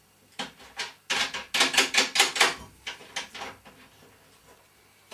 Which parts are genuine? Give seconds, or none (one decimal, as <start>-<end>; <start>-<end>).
0.0-5.1